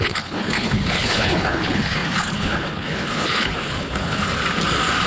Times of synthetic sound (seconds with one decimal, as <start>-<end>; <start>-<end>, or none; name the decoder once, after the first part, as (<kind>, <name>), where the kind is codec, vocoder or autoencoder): 0.0-4.4 (codec, HILCodec)